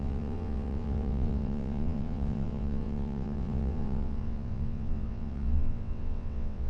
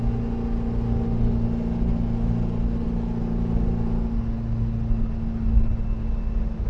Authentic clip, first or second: second